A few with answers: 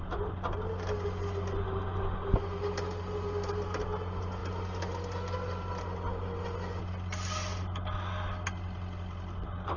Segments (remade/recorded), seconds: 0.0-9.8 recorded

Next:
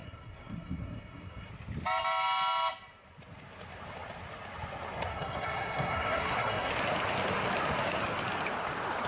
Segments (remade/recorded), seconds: 0.0-1.5 remade; 1.5-5.1 recorded; 5.1-6.7 remade; 6.7-9.1 recorded

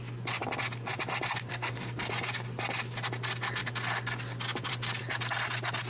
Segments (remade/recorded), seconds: 0.0-1.5 recorded; 1.5-2.1 remade; 2.1-5.9 recorded